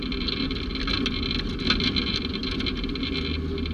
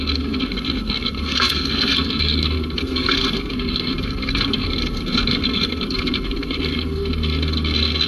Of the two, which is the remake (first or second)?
second